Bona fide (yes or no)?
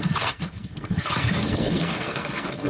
no